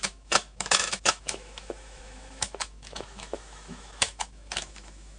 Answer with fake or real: fake